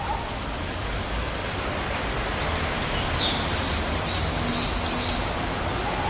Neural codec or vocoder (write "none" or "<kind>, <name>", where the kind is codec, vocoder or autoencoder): none